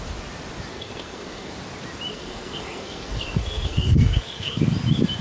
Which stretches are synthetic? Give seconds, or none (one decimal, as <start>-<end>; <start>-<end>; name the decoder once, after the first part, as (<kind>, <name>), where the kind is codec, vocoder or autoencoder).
0.7-1.5 (codec, SNAC); 2.1-4.6